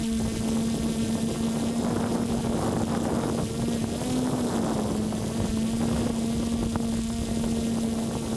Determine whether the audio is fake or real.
real